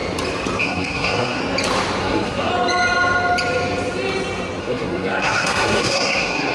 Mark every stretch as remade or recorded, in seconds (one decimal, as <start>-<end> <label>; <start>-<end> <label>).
0.0-0.6 recorded; 0.6-1.4 remade; 1.4-2.0 recorded; 2.0-2.5 remade; 2.5-4.6 recorded; 4.6-6.5 remade